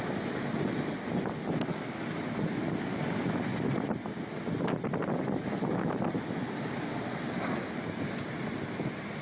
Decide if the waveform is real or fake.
real